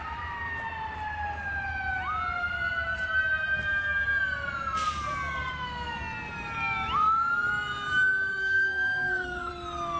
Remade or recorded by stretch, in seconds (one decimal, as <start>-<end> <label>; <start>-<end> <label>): 0.0-8.3 recorded; 8.3-9.5 remade; 9.5-10.0 recorded